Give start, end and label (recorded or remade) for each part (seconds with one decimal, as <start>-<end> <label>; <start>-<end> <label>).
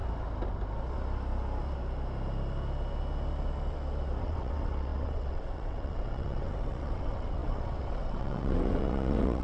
0.0-4.2 recorded; 4.2-9.4 remade